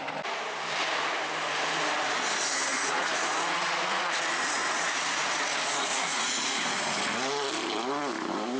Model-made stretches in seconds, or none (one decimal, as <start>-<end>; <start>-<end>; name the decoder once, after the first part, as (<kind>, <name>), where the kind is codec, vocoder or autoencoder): 2.7-4.0 (vocoder, Vocos); 4.6-5.4; 5.9-7.0